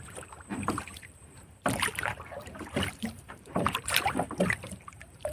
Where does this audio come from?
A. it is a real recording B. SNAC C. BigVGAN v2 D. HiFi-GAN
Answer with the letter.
C